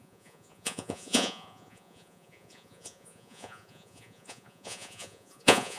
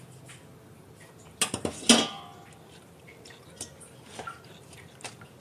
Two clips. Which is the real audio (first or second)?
second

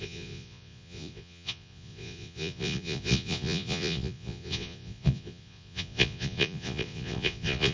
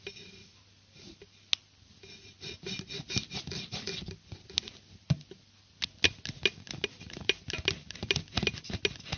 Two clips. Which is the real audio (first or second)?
second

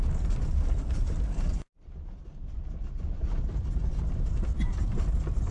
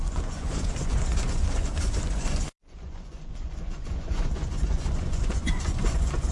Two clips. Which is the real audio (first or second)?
first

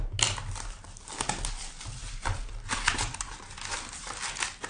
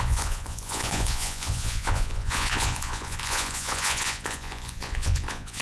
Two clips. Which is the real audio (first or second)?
first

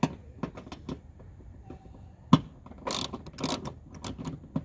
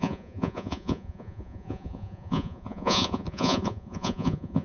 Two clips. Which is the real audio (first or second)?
first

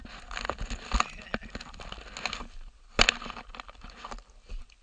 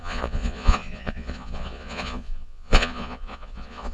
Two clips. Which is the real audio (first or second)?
first